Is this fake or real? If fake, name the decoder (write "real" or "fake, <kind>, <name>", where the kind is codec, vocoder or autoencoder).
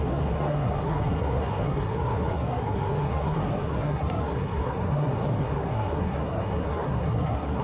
fake, codec, SNAC